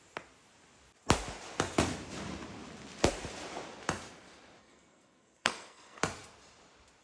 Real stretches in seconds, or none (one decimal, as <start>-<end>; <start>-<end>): 0.0-4.6; 6.0-7.0